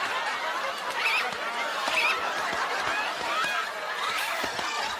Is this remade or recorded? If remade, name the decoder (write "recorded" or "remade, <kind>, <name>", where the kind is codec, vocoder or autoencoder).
recorded